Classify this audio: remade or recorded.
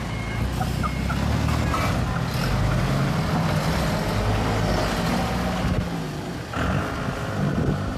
recorded